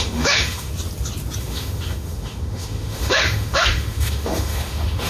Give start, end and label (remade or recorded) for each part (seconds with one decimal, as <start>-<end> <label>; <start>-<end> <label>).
0.0-0.7 remade; 0.7-1.4 recorded; 1.4-5.1 remade